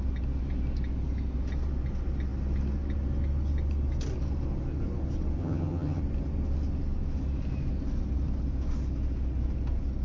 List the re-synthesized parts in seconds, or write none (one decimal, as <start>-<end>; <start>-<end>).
5.4-6.0